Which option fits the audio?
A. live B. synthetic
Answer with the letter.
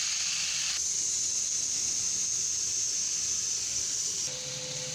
A